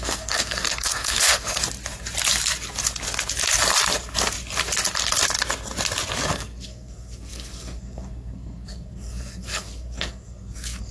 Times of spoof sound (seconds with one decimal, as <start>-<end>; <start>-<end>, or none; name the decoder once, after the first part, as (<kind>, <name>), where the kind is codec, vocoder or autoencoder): 0.0-1.6 (codec, SNAC); 6.3-10.9